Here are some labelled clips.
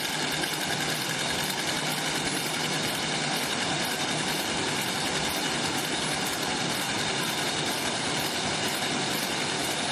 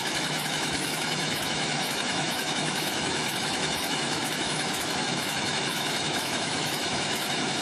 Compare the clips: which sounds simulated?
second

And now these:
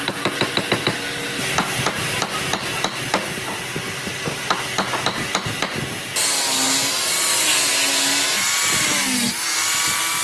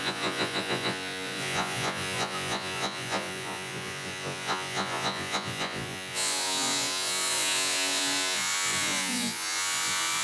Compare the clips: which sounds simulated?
second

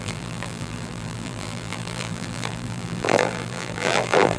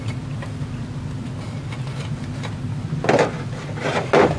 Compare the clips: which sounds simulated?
first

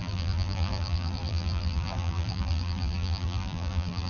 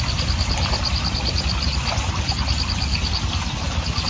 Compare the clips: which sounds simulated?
first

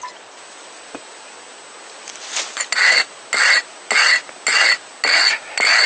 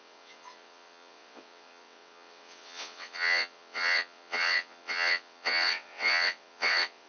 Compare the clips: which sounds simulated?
second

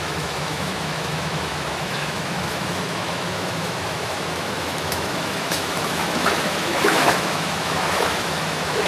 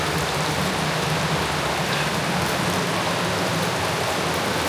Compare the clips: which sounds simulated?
first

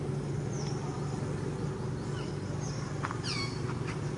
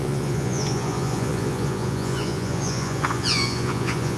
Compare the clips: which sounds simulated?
second